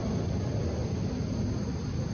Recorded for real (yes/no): yes